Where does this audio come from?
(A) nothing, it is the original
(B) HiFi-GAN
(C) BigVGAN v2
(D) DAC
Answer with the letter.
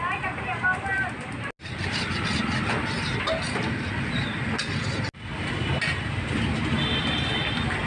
A